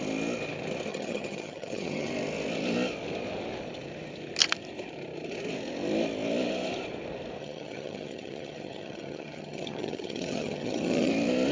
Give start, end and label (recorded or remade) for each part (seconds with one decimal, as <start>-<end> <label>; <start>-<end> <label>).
0.0-0.9 recorded; 0.9-2.1 remade; 2.1-7.4 recorded; 7.4-11.1 remade; 11.1-11.5 recorded

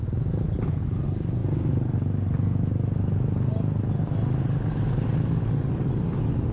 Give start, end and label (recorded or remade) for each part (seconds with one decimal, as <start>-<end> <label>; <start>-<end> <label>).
0.0-6.5 recorded

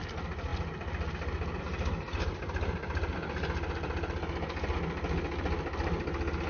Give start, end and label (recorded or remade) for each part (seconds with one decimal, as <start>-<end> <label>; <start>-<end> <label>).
0.0-6.5 recorded

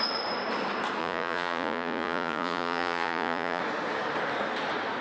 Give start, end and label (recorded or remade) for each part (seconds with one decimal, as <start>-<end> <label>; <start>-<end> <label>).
0.0-1.0 recorded; 1.0-3.6 remade; 3.6-5.0 recorded

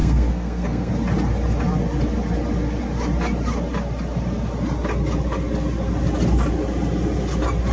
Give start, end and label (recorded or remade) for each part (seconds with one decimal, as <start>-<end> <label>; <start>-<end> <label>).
0.0-0.9 remade; 0.9-7.7 recorded